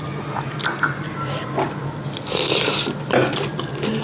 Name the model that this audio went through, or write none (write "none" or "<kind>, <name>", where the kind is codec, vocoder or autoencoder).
none